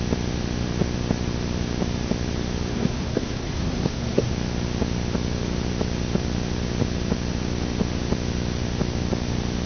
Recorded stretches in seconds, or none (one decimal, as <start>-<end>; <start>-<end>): 0.0-2.7; 4.3-9.7